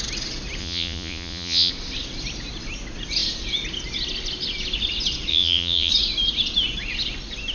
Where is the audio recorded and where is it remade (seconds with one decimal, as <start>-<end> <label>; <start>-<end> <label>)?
0.0-0.6 recorded; 0.6-1.7 remade; 1.7-5.3 recorded; 5.3-5.9 remade; 5.9-7.5 recorded